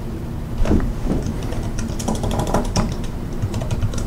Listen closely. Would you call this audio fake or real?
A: fake